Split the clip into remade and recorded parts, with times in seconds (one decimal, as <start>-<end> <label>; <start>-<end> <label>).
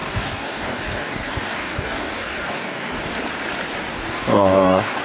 0.0-3.0 remade; 3.0-3.9 recorded; 3.9-5.0 remade